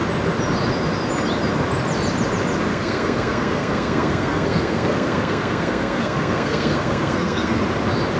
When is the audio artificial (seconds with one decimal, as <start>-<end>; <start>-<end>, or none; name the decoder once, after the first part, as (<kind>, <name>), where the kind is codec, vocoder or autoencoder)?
2.7-7.6 (codec, SNAC)